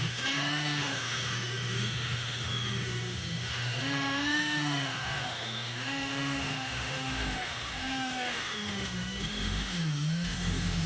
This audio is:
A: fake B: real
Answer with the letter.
A